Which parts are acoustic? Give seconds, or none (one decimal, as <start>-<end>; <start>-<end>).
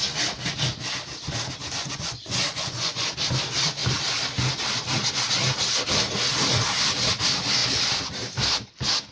0.0-1.8; 3.1-9.1